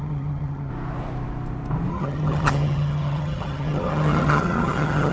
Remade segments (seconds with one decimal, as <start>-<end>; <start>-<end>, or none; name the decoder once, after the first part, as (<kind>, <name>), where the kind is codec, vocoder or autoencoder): 0.0-0.7 (vocoder, HiFi-GAN); 1.9-5.1

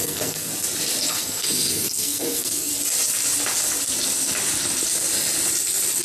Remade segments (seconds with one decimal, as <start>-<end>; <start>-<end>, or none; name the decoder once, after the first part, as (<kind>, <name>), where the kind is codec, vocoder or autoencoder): 0.0-0.5 (codec, SNAC); 1.1-2.7

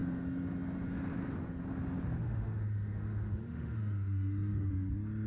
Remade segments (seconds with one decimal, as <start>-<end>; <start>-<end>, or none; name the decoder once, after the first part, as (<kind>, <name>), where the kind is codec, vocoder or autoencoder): 2.2-4.7 (autoencoder, DAC-VAE)